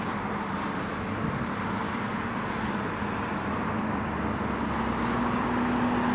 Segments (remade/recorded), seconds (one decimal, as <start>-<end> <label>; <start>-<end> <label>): 0.0-6.1 recorded